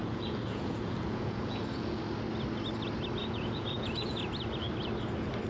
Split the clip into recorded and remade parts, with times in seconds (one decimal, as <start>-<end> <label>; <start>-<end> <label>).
0.0-2.0 remade; 2.0-3.2 recorded; 3.2-4.2 remade; 4.2-5.5 recorded